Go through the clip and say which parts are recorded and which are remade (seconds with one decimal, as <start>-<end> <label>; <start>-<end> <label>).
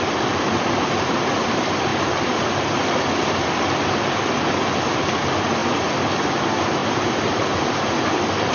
0.0-1.9 recorded; 1.9-2.8 remade; 2.8-5.6 recorded; 5.6-6.1 remade; 6.1-6.8 recorded; 6.8-7.6 remade; 7.6-8.5 recorded